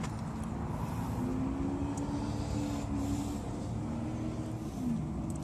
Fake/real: real